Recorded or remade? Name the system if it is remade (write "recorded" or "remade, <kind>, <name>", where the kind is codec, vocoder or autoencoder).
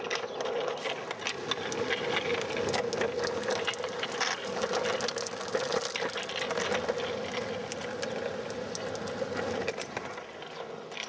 recorded